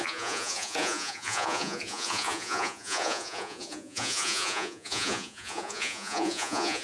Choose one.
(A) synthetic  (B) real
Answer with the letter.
A